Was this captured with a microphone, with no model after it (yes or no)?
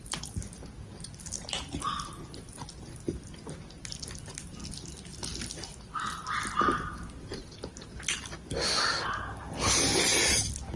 yes